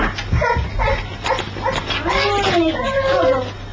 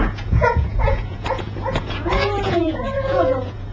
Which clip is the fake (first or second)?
second